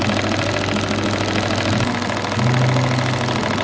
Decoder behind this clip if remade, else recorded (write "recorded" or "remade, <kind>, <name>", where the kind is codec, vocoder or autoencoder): recorded